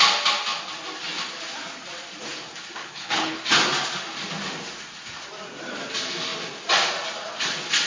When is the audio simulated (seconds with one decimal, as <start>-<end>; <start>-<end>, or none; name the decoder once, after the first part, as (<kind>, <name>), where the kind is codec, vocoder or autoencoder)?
2.8-3.4 (codec, HILCodec)